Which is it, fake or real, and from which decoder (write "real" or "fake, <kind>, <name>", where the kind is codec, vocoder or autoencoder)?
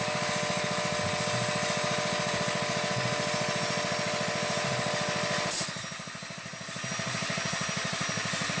real